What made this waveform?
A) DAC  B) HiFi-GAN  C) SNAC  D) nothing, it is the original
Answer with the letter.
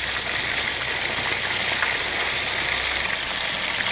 D